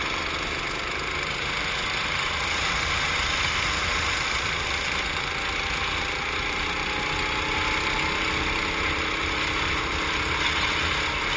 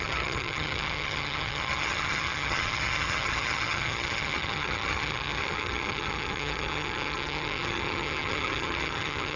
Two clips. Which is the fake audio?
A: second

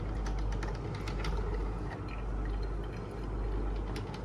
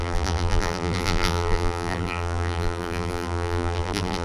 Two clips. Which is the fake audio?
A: second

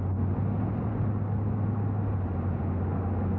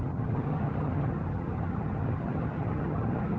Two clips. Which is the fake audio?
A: second